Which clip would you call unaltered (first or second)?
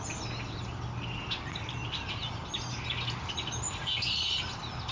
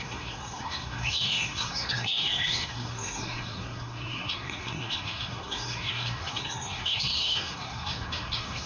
first